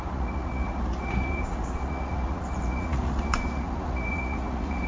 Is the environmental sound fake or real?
fake